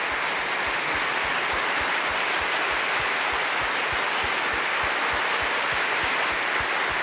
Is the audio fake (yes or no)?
no